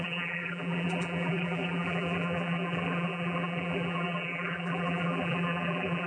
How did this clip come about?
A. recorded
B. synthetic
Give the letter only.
B